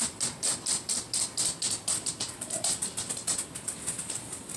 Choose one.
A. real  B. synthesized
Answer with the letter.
A